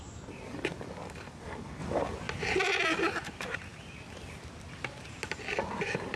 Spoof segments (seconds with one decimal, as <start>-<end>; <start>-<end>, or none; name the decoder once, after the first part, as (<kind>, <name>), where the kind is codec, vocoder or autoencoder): 3.7-5.2 (vocoder, BigVGAN v2)